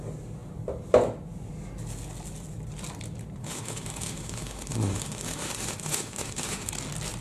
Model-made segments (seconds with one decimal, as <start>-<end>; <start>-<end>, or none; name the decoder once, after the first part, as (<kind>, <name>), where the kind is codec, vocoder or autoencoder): 3.4-6.7 (autoencoder, DAC-VAE)